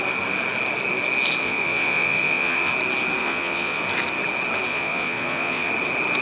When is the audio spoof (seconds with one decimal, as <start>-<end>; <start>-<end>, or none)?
1.4-2.7; 3.2-3.8; 4.7-5.7